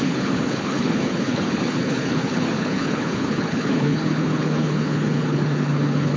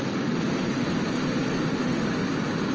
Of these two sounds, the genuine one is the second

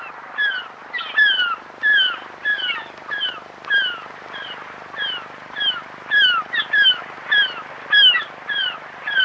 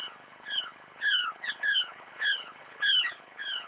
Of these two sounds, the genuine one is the first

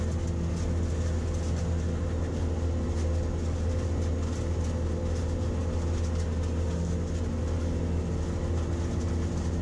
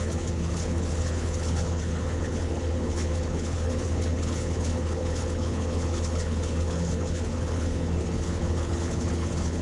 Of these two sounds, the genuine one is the first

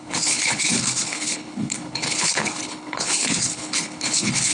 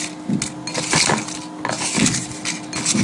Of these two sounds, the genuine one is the second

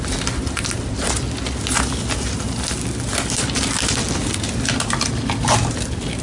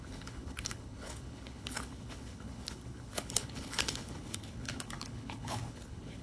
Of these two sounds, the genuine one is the first